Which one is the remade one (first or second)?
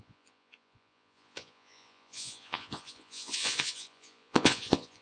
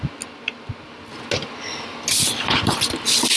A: first